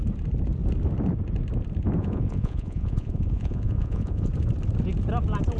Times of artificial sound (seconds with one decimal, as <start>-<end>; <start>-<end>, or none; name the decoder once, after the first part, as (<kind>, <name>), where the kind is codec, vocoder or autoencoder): 2.0-4.3 (vocoder, Vocos)